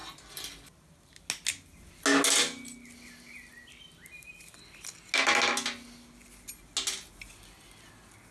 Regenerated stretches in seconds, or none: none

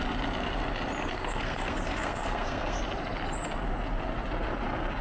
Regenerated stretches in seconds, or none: 1.0-2.8 (codec, SNAC)

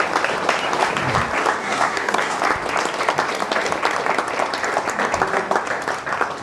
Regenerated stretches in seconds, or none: 1.6-2.4 (codec, SNAC)